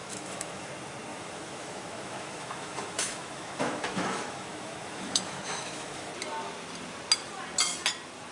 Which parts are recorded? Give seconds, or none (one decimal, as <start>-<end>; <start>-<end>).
0.7-1.1; 6.1-8.3